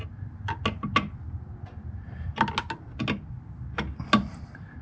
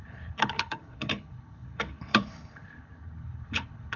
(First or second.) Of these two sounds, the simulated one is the second